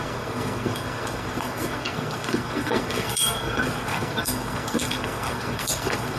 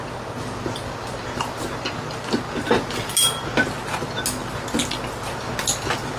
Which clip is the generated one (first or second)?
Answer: first